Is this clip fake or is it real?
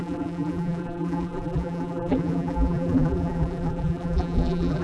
fake